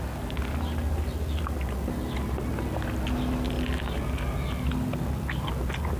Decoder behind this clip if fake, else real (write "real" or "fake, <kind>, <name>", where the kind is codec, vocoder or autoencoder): real